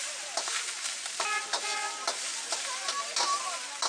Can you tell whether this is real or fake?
real